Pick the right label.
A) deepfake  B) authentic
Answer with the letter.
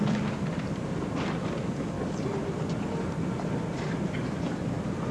A